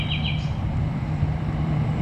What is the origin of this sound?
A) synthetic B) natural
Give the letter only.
A